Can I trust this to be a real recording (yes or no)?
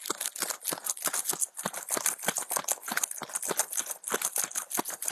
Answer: yes